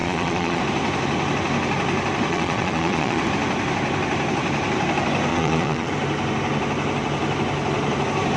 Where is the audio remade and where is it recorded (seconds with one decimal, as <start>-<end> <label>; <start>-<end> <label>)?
0.0-0.6 remade; 0.6-2.3 recorded; 2.3-3.2 remade; 3.2-5.3 recorded; 5.3-5.9 remade; 5.9-8.4 recorded